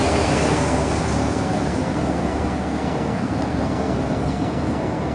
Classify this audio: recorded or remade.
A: remade